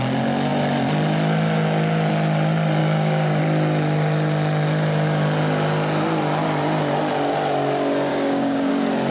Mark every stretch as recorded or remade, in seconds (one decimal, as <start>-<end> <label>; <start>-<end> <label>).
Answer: 0.0-2.8 recorded; 2.8-3.4 remade; 3.4-8.1 recorded; 8.1-8.7 remade; 8.7-9.1 recorded